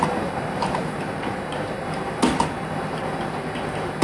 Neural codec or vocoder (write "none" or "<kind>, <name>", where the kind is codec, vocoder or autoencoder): vocoder, BigVGAN v2